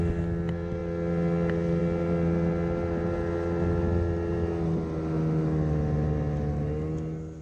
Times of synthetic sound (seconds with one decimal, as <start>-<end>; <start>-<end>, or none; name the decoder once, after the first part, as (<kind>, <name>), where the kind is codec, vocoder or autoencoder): none